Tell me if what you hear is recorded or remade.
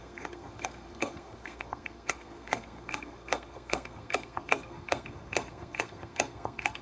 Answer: remade